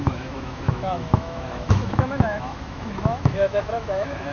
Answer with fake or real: fake